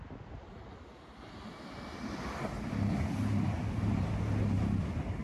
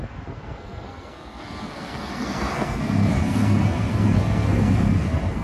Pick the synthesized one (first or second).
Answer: second